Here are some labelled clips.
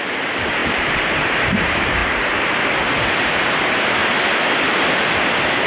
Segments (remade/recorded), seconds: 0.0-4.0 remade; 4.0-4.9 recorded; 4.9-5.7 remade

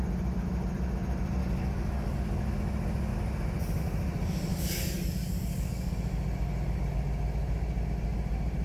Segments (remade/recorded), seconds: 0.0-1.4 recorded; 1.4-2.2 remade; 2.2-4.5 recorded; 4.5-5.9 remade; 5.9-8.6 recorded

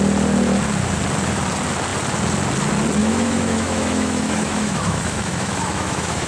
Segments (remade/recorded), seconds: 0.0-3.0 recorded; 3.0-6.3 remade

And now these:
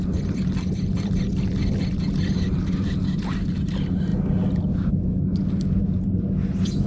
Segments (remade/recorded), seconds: 0.0-6.9 recorded

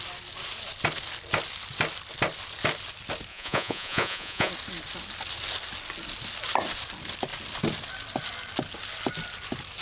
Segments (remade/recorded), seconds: 0.0-3.3 recorded; 3.3-4.5 remade; 4.5-9.8 recorded